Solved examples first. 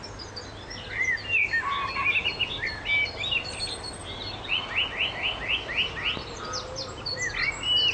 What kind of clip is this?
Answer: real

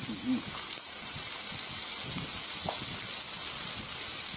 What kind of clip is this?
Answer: real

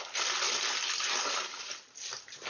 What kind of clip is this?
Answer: real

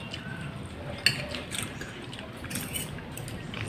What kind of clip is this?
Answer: real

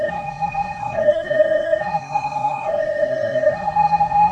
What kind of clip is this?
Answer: fake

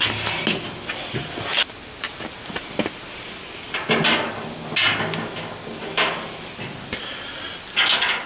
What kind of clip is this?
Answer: real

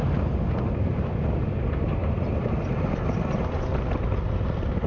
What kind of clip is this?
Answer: real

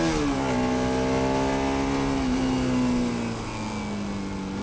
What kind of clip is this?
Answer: real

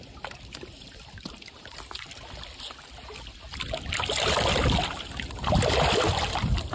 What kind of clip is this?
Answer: real